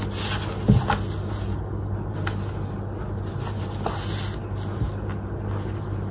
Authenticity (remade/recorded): recorded